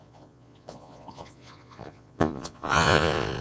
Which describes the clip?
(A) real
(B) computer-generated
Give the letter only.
B